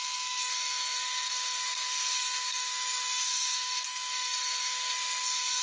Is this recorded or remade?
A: remade